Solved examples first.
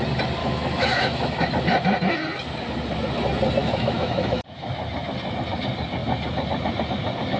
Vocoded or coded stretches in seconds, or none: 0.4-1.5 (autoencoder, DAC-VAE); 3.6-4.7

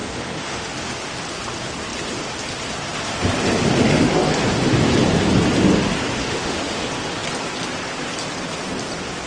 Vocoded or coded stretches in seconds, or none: 0.0-0.7 (autoencoder, DAC-VAE); 6.2-6.8

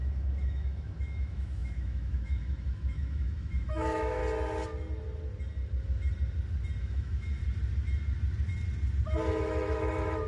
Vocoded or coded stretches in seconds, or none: 0.0-4.2 (autoencoder, DAC-VAE); 6.8-7.4; 9.4-10.3

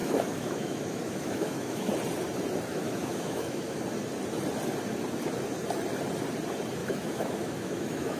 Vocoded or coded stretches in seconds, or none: 0.0-1.9 (autoencoder, DAC-VAE); 2.7-3.8; 6.8-8.2

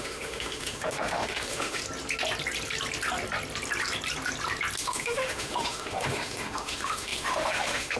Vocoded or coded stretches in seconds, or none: 0.0-1.8 (autoencoder, DAC-VAE); 4.8-8.0

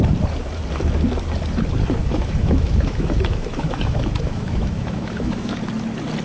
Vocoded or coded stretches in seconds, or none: 2.0-5.7 (autoencoder, DAC-VAE)